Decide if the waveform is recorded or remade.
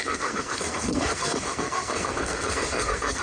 remade